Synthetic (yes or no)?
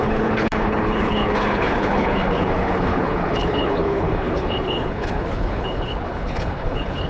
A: yes